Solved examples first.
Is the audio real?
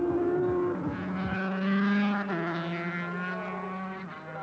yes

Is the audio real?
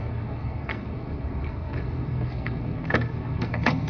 no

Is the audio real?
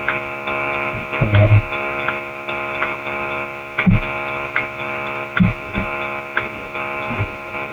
no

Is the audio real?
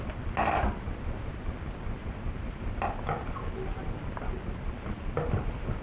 yes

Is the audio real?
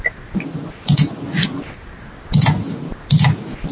yes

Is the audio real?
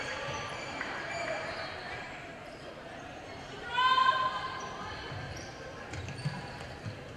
no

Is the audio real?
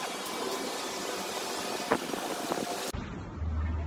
yes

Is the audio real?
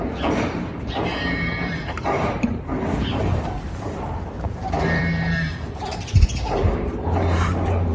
no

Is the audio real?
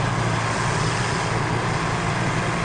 yes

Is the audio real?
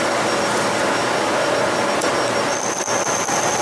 yes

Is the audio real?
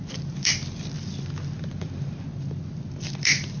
yes